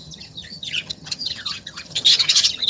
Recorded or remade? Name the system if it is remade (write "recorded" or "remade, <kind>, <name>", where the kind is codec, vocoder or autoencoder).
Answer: remade, vocoder, HiFi-GAN